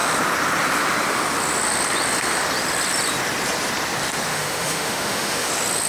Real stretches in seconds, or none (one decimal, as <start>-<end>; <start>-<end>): 0.0-4.3; 5.5-5.9